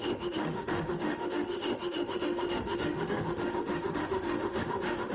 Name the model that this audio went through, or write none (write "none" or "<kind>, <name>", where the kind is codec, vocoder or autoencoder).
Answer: autoencoder, DAC-VAE